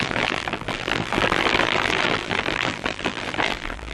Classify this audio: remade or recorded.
remade